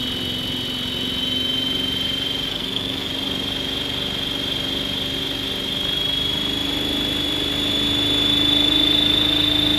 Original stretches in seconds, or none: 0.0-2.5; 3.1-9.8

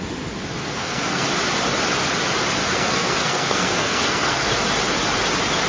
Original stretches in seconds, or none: 0.0-0.6; 1.3-2.6; 4.5-5.7

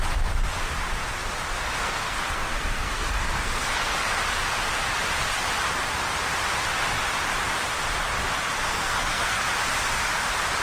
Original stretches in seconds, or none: 0.0-1.8; 4.2-8.7; 9.4-10.6

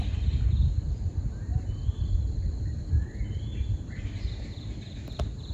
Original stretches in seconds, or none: 0.0-5.5

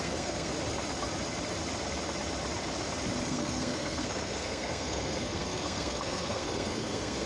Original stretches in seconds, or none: 0.5-3.2

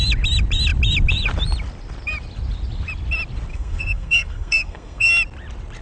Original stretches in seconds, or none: 0.0-3.5; 5.1-5.8

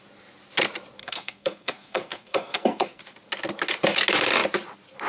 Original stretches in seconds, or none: 0.0-1.0; 3.0-5.1

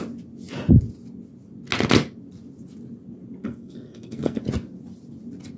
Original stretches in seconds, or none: 0.0-3.4; 4.4-5.6